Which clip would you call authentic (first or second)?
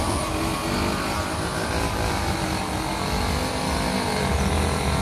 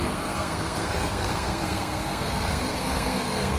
first